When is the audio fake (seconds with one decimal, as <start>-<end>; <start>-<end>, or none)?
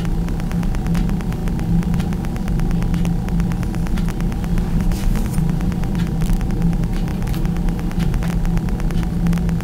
4.5-6.5